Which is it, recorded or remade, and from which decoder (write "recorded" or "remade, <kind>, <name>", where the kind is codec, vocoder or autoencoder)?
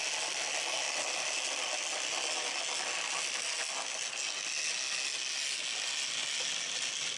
recorded